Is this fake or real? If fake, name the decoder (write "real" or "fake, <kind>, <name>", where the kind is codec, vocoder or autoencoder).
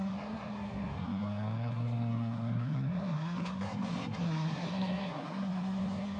fake, codec, SNAC